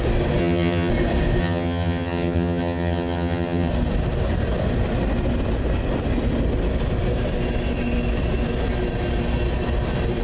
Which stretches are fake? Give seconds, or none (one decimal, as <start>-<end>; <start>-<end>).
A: 0.4-0.9; 1.4-3.7